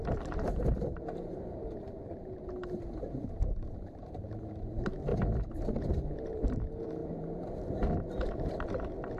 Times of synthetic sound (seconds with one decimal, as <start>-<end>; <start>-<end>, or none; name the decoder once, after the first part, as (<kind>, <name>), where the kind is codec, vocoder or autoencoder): 0.0-5.1 (vocoder, BigVGAN v2); 5.9-9.2